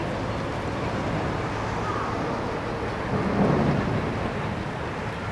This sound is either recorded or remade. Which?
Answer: recorded